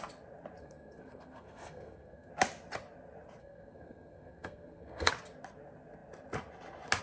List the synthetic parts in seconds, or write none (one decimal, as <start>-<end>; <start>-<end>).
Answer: 0.6-2.3; 3.4-5.1